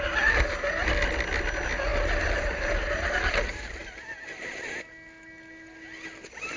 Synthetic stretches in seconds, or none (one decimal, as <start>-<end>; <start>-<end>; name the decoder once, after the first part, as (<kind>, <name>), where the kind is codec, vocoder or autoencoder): none